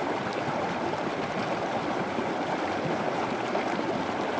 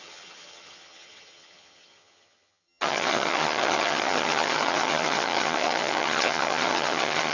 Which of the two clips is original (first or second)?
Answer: first